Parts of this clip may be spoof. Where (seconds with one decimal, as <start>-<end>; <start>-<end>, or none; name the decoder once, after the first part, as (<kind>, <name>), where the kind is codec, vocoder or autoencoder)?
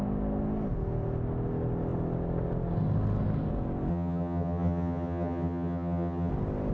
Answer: 3.9-6.3 (vocoder, HiFi-GAN)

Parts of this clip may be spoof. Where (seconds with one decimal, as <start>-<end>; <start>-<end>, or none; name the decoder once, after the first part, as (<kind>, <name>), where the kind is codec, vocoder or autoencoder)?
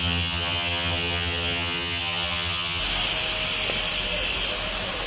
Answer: 0.0-2.8 (vocoder, HiFi-GAN)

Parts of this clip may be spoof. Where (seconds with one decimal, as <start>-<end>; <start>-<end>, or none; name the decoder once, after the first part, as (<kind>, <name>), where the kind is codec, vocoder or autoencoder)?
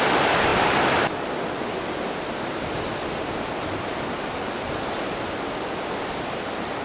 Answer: none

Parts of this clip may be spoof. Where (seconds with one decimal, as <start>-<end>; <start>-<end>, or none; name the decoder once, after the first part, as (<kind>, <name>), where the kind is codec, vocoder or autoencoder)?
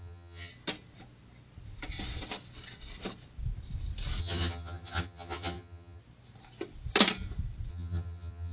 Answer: 0.0-0.5 (vocoder, HiFi-GAN); 4.2-6.0; 7.7-8.5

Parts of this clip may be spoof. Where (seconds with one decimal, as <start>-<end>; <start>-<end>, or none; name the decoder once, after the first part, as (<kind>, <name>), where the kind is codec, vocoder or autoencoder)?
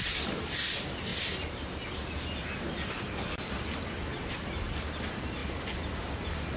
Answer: none